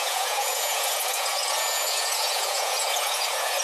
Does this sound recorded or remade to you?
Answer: remade